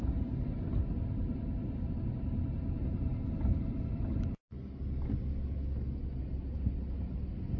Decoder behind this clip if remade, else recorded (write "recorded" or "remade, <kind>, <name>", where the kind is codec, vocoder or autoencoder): recorded